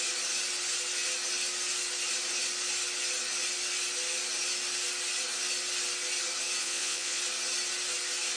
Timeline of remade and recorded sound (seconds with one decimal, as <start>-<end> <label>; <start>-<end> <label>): 0.0-6.6 recorded; 6.6-7.2 remade; 7.2-8.4 recorded